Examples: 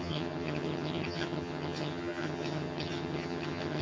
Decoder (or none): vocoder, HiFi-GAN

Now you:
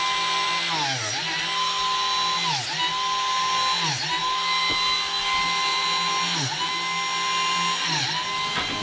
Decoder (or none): none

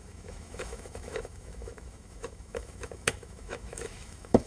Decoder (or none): autoencoder, DAC-VAE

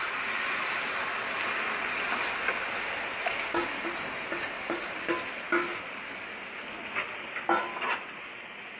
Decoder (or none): none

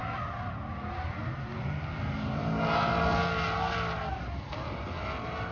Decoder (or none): none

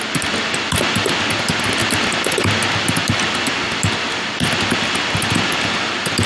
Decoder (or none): none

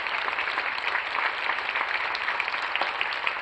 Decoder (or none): none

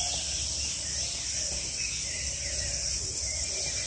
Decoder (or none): none